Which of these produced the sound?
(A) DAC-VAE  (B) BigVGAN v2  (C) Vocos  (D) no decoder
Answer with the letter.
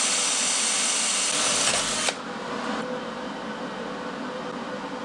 B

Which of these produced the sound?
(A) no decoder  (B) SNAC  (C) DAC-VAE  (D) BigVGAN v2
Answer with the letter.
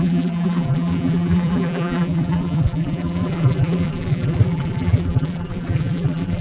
D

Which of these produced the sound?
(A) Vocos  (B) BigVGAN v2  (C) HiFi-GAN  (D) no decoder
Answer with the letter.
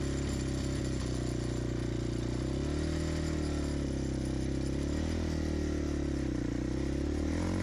D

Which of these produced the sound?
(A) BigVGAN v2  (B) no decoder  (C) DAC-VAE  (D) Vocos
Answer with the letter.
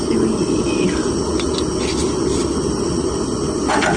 B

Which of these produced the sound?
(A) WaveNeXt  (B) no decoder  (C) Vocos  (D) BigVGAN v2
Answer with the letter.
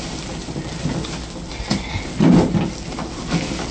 B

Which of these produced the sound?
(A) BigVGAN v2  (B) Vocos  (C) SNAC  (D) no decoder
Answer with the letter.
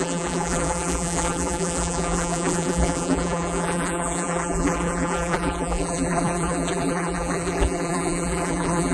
A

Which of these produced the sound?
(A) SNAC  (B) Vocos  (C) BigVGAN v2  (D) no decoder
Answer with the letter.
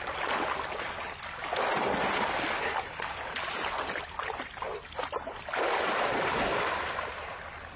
C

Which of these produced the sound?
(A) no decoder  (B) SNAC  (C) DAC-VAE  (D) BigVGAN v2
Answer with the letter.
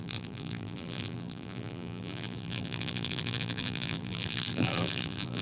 D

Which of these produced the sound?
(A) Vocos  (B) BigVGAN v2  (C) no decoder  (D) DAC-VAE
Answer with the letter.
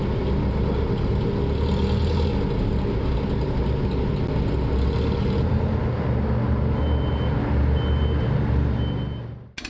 C